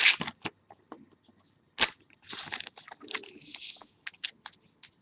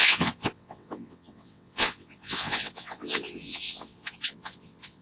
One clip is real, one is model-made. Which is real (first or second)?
first